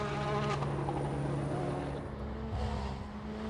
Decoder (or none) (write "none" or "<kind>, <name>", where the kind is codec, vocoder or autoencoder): none